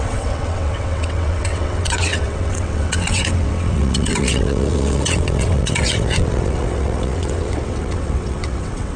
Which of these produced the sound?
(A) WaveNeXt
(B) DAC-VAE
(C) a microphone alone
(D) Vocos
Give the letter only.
A